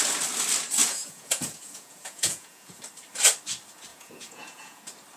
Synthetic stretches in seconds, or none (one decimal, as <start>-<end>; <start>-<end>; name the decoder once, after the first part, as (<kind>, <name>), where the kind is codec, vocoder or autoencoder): 0.8-2.8 (vocoder, Vocos); 3.9-4.8